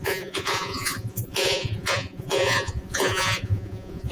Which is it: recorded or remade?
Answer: remade